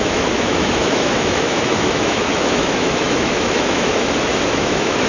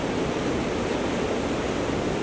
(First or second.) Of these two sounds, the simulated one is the first